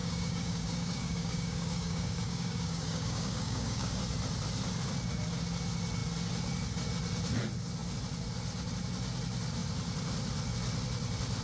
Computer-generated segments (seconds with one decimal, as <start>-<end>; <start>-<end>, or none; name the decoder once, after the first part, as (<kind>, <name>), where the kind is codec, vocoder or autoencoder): 0.0-4.0 (codec, DAC)